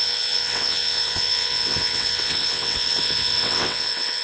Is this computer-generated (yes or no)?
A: yes